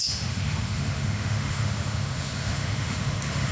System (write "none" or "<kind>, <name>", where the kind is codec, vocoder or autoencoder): autoencoder, DAC-VAE